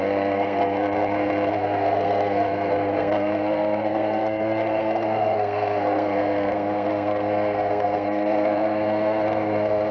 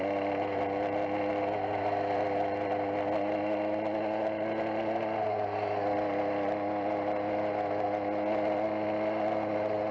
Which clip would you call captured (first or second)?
second